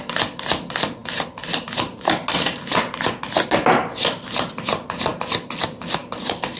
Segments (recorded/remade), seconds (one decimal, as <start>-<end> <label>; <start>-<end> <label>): 0.0-6.6 recorded